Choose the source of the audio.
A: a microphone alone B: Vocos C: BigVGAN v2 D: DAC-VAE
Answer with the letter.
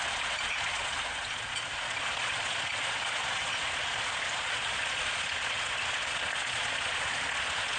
B